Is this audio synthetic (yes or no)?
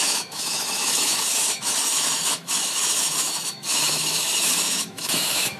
yes